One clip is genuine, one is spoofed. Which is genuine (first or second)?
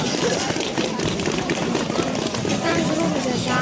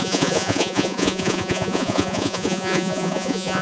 first